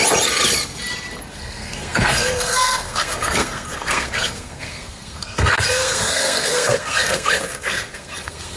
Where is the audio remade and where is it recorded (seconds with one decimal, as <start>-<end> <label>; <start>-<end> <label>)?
0.0-1.3 recorded; 1.3-8.6 remade

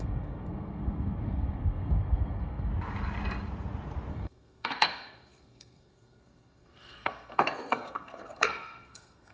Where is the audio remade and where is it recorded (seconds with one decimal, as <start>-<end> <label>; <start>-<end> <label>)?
0.0-2.7 remade; 2.7-4.1 recorded; 4.1-9.3 remade

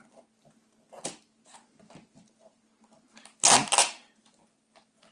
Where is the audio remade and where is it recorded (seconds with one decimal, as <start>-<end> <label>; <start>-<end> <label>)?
0.0-5.1 recorded

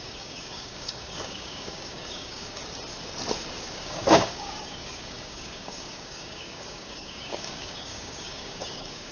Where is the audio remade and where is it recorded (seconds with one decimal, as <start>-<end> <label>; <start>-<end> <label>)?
0.0-2.6 remade; 2.6-3.6 recorded; 3.6-9.1 remade

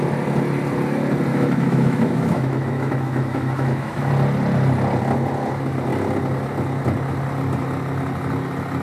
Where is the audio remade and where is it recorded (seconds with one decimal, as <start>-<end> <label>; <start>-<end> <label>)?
0.0-1.3 recorded; 1.3-4.1 remade; 4.1-8.8 recorded